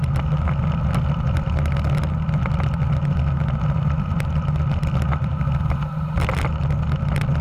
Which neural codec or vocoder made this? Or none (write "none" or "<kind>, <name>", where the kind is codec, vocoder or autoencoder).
none